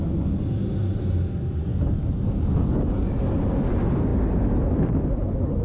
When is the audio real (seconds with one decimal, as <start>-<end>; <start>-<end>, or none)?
0.0-5.6